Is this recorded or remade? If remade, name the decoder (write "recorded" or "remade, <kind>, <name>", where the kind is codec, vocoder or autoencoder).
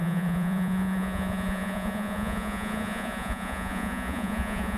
remade, vocoder, Vocos